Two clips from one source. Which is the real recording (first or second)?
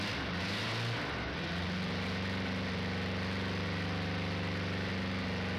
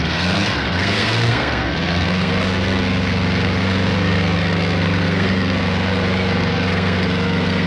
first